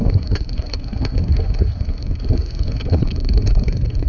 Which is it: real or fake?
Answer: fake